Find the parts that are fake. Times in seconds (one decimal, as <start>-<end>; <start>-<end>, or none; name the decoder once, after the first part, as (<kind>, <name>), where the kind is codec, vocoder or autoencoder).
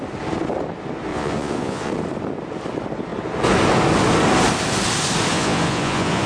1.1-1.9 (vocoder, Vocos); 5.3-6.3